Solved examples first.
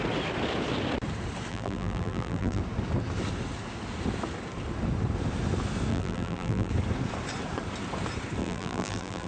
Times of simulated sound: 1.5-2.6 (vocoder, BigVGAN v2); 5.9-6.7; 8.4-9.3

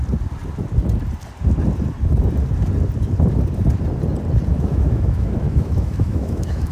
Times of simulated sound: 4.5-6.7 (autoencoder, DAC-VAE)

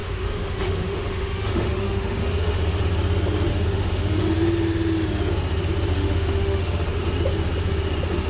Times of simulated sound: 0.0-2.8 (autoencoder, DAC-VAE); 3.5-4.2; 5.9-7.0

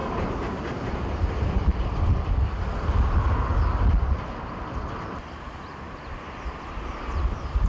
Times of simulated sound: 0.0-1.9 (vocoder, BigVGAN v2); 5.2-7.7

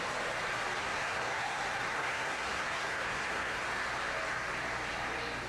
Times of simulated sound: 0.8-1.6 (codec, SNAC); 2.0-3.6

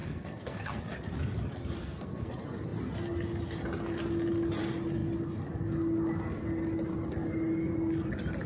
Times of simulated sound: 0.0-0.8 (codec, SNAC); 1.8-2.3

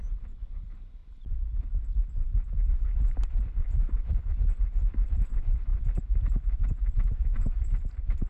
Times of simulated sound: none